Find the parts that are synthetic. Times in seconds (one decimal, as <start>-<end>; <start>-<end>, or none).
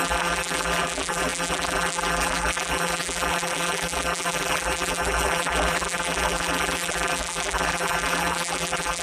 0.0-9.0